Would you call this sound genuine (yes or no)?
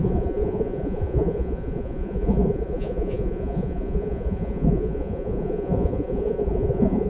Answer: no